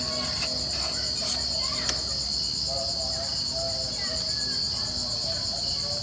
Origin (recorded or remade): recorded